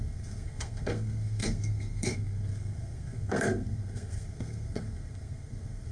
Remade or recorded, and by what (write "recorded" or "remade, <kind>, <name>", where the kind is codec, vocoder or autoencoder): remade, codec, SNAC